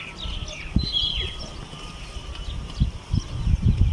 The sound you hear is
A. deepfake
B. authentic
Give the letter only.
B